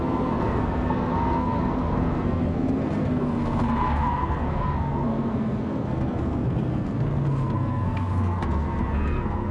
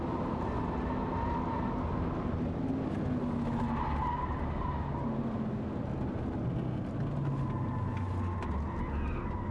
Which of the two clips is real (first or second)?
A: second